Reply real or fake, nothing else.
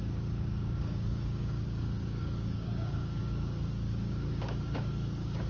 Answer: fake